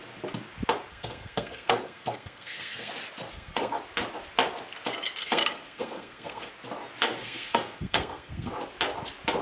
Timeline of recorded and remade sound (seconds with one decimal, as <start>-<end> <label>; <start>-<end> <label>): 0.0-0.9 recorded; 0.9-2.9 remade; 2.9-3.3 recorded; 3.3-3.8 remade; 3.8-5.2 recorded; 5.2-6.5 remade; 6.5-7.2 recorded; 7.2-8.5 remade; 8.5-9.4 recorded